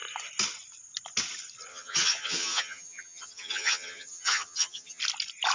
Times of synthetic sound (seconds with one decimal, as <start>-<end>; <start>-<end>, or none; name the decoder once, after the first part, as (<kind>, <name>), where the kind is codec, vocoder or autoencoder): 1.7-5.0 (vocoder, HiFi-GAN)